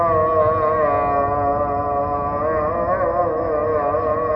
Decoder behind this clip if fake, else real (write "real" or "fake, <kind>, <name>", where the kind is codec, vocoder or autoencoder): real